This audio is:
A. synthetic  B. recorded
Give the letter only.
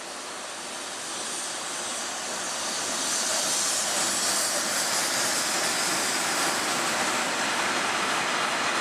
B